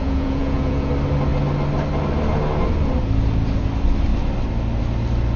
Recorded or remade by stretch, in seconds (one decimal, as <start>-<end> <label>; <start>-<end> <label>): 0.0-0.9 remade; 0.9-5.4 recorded